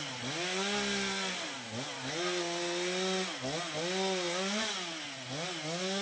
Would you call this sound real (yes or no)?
yes